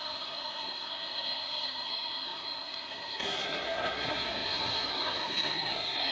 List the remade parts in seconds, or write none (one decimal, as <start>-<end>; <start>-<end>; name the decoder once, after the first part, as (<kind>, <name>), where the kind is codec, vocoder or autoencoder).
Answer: 0.0-6.1 (codec, SNAC)